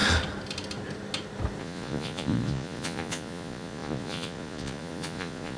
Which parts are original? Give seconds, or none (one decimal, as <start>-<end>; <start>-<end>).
0.0-1.6